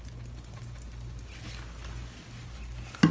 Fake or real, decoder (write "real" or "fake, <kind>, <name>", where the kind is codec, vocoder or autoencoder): real